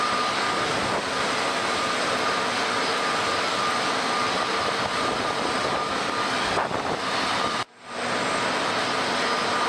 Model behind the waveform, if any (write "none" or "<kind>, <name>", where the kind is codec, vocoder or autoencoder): none